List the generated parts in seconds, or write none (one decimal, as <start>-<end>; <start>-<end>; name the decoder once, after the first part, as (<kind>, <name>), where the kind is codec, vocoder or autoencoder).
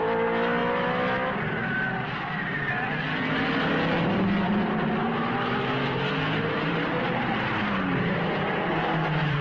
5.0-9.4 (vocoder, BigVGAN v2)